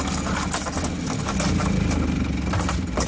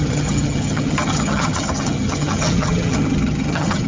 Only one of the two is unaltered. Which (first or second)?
first